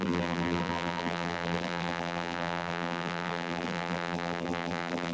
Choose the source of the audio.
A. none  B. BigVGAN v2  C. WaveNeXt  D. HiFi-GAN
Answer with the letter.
B